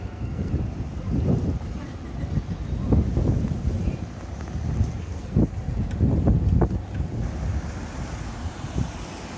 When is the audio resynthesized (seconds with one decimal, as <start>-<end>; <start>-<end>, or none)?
0.0-0.5; 5.0-5.4